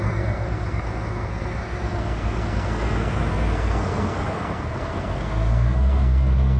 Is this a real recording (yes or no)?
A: no